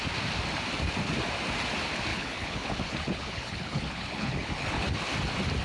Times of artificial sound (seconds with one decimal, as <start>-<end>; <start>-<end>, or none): 2.1-5.0